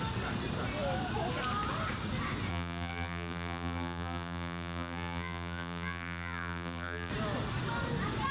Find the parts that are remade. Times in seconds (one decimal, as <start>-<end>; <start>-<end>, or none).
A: 2.5-7.1